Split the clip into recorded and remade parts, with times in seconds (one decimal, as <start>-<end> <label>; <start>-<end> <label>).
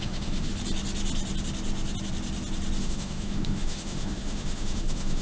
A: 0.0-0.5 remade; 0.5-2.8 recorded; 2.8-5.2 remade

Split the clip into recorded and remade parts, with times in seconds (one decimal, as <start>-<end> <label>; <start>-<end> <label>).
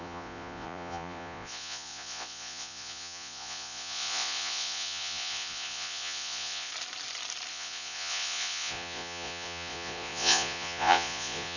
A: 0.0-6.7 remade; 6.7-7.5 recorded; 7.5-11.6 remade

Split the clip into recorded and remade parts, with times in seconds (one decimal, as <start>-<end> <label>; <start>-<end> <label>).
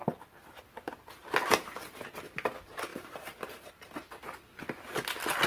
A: 0.0-5.5 recorded